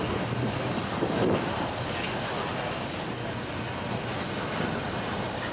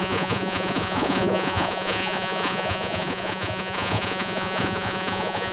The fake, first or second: second